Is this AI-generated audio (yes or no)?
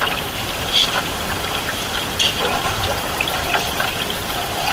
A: no